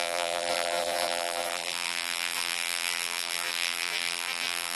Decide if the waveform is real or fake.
fake